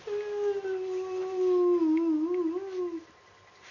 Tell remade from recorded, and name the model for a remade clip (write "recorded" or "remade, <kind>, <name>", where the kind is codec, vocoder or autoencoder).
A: recorded